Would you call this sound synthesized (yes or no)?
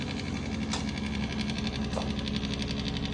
no